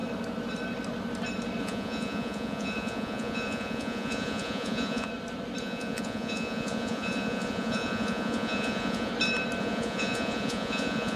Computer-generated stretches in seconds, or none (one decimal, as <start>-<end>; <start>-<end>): 1.6-5.1; 5.6-9.1; 9.6-11.2